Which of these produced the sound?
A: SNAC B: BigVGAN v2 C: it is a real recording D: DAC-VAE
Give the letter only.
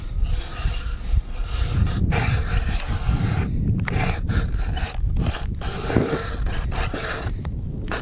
B